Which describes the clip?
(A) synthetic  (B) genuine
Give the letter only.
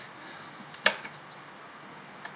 B